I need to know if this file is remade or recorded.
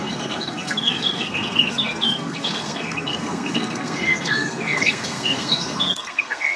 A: remade